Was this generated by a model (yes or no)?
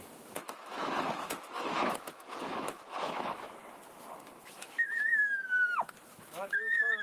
yes